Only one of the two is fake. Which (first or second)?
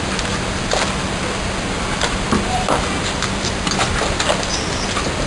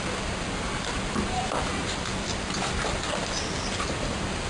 second